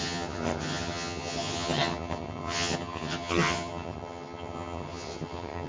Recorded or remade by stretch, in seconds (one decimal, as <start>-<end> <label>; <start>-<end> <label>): 0.0-5.7 remade